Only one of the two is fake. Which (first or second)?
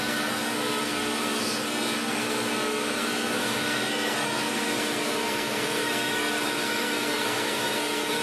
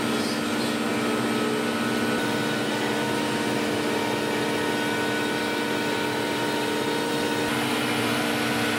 first